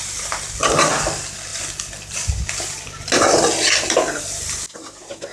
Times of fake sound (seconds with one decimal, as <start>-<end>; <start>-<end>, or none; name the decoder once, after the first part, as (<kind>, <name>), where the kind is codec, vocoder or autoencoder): none